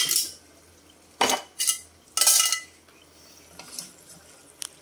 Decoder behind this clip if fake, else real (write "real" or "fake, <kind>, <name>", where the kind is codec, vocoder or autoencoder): real